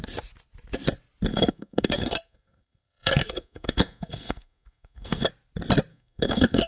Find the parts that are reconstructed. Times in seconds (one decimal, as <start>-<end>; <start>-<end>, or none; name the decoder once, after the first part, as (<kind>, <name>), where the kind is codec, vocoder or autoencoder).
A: 1.3-5.3 (codec, SNAC); 5.9-6.7